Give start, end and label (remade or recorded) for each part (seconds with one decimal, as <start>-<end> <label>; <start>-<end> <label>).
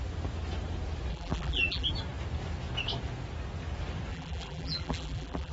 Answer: 0.0-1.1 recorded; 1.1-1.9 remade; 1.9-4.1 recorded; 4.1-5.5 remade